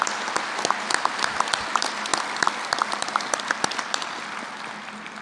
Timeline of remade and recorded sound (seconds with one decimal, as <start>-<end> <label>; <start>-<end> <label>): 0.0-2.1 recorded; 2.1-4.0 remade; 4.0-5.2 recorded